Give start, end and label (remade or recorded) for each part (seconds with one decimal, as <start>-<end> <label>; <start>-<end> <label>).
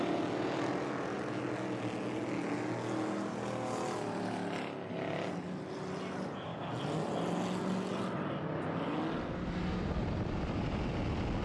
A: 0.0-11.4 recorded